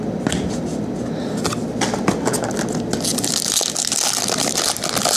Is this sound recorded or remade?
recorded